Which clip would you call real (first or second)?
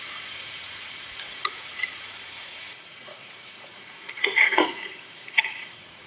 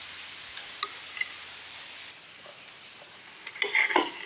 second